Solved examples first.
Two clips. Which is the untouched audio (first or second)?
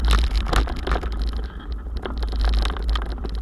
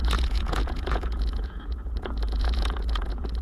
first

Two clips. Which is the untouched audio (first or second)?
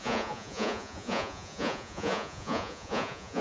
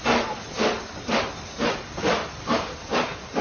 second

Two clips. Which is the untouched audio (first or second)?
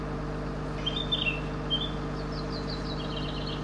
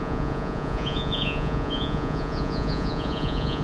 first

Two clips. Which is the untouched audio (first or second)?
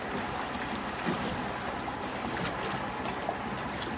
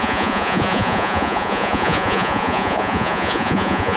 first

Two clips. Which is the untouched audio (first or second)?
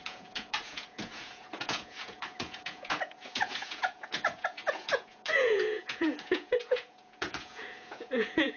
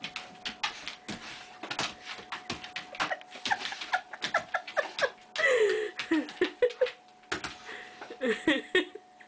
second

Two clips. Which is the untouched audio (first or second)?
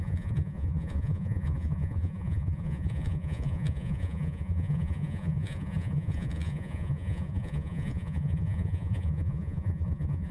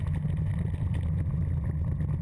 second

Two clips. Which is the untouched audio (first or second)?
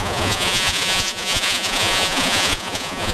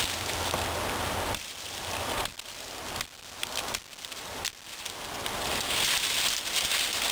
second